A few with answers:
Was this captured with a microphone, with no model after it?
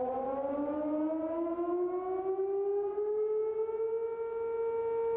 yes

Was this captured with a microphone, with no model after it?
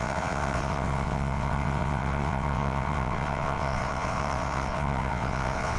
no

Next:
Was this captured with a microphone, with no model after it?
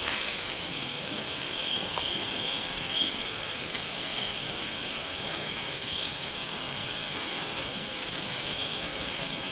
no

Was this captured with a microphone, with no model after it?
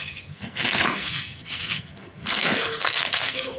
no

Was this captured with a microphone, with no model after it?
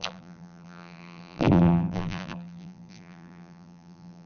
no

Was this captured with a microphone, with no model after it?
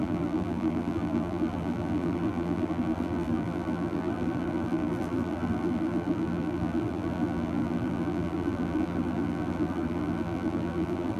no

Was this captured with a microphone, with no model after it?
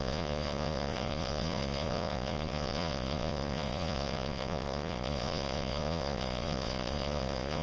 no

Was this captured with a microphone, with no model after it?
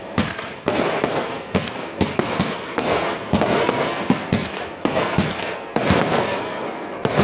no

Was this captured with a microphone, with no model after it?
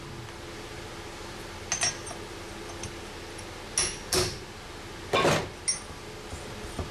yes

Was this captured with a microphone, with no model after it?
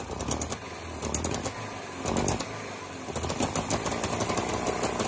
yes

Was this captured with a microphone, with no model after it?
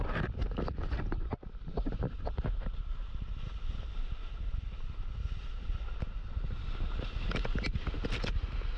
yes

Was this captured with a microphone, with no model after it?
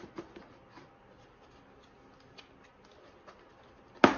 yes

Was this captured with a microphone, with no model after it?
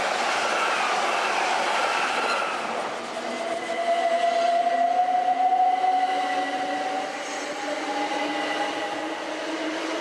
yes